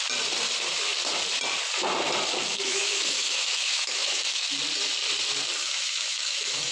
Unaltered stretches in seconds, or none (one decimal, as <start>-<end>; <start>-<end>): 0.0-2.5; 4.4-5.6